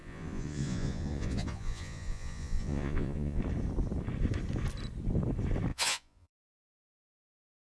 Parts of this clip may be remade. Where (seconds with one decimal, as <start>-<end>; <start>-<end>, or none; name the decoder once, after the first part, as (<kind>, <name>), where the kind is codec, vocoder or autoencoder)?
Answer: 0.0-3.4 (vocoder, Vocos); 5.7-6.6